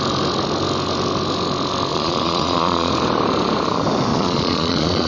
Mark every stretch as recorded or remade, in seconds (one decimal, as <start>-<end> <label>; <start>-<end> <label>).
0.0-1.9 recorded; 1.9-2.9 remade; 2.9-4.1 recorded; 4.1-5.1 remade